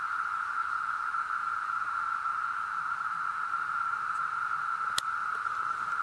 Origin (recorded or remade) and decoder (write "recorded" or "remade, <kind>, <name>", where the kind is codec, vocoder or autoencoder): recorded